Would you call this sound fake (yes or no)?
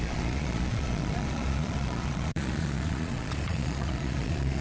yes